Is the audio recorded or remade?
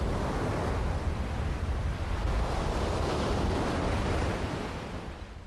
recorded